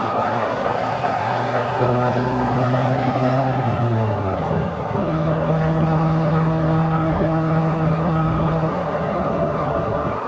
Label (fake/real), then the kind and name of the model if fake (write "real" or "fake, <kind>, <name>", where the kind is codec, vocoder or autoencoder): fake, codec, SNAC